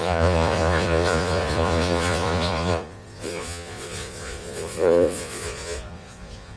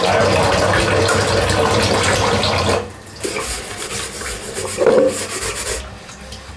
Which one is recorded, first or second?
second